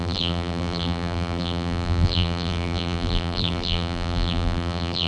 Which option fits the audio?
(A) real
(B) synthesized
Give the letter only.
B